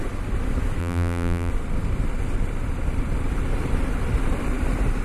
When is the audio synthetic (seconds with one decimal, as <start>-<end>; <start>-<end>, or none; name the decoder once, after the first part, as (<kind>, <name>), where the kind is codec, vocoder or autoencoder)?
0.8-1.5 (vocoder, BigVGAN v2)